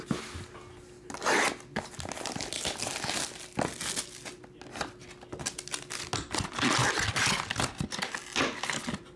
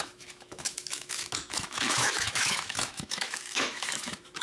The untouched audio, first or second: first